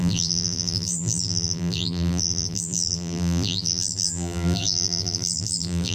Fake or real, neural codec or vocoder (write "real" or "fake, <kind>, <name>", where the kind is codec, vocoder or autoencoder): fake, vocoder, BigVGAN v2